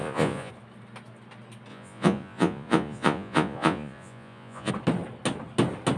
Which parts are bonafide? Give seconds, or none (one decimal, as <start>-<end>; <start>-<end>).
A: 0.5-1.7; 4.7-6.0